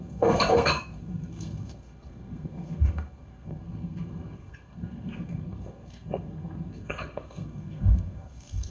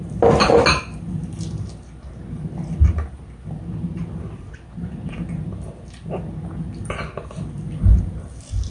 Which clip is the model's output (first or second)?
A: first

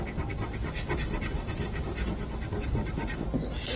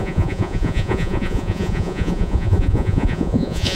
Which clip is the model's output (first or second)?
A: second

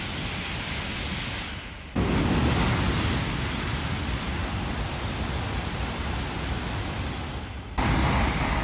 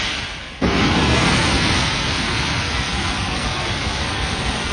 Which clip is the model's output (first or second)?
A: second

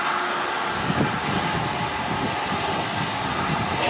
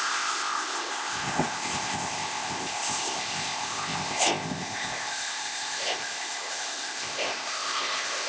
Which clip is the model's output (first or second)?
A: second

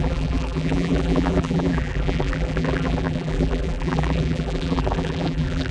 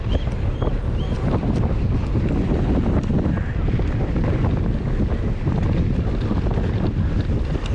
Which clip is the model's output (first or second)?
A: first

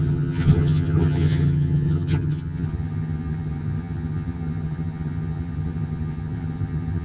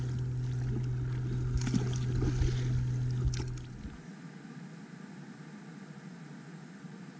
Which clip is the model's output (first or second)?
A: first